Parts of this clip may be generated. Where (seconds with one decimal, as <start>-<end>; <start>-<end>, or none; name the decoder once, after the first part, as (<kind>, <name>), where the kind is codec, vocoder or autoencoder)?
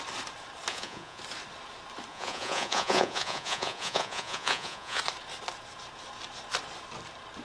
0.7-1.2 (vocoder, Vocos); 2.1-5.0